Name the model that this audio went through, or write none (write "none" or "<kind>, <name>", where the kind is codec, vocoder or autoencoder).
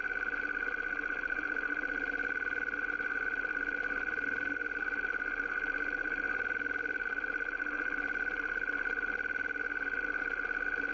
none